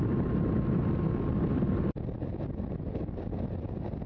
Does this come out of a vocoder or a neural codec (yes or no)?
no